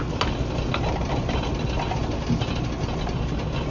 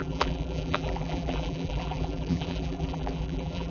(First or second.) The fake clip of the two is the second